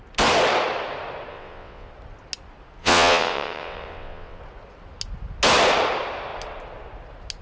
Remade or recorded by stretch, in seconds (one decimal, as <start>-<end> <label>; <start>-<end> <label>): 0.0-1.3 recorded; 1.3-1.9 remade; 1.9-2.8 recorded; 2.8-4.4 remade; 4.4-7.4 recorded